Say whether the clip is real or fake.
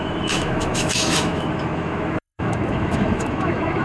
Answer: fake